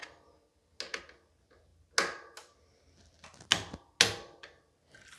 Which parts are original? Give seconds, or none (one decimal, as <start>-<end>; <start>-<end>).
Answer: 0.0-5.2